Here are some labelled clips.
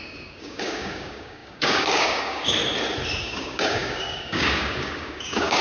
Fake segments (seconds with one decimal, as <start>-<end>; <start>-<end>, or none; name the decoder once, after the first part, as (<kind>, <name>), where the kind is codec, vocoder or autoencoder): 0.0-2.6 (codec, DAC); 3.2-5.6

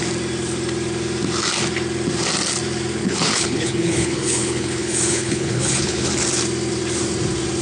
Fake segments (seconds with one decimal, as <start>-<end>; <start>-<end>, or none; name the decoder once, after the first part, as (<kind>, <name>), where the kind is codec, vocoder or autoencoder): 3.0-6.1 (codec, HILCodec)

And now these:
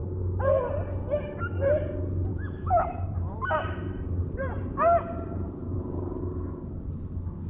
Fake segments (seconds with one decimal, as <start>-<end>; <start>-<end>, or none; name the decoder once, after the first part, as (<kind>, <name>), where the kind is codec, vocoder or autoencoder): 2.3-6.2 (vocoder, BigVGAN v2)

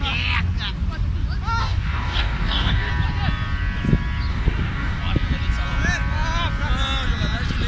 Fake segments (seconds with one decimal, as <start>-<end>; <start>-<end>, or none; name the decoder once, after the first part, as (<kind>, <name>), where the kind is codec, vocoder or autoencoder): 1.6-2.9 (codec, DAC); 4.3-5.0